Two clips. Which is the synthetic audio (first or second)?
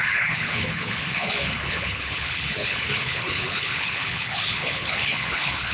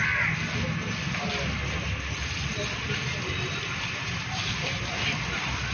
first